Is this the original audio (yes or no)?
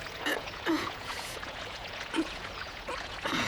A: no